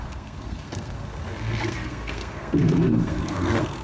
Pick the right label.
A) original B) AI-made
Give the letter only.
B